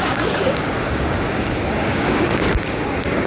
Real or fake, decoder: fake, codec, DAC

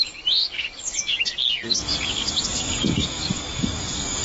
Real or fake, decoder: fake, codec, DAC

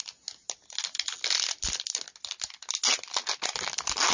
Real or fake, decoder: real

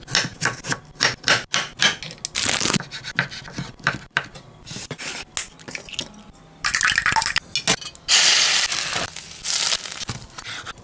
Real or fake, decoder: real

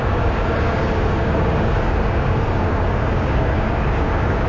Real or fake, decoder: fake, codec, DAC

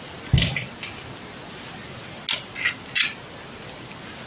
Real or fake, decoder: real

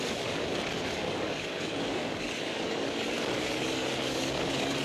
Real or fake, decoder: fake, codec, DAC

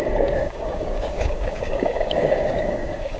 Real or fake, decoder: fake, codec, DAC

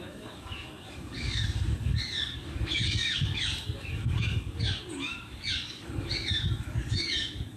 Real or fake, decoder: fake, codec, DAC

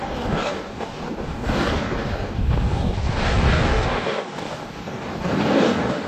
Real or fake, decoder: fake, codec, DAC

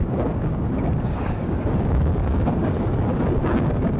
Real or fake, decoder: fake, codec, DAC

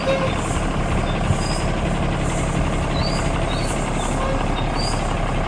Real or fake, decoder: real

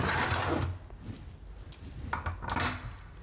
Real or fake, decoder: real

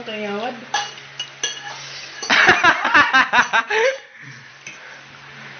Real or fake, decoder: real